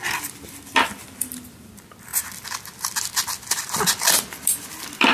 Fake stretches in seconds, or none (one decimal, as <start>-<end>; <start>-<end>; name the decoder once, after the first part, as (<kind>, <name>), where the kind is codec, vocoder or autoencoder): 0.0-5.1 (vocoder, BigVGAN v2)